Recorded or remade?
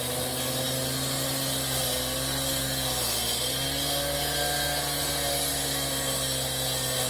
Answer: recorded